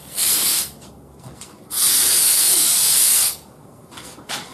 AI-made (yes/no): yes